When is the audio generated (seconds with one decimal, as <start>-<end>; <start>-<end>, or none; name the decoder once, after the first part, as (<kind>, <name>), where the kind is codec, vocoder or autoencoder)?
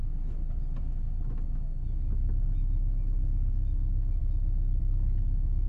none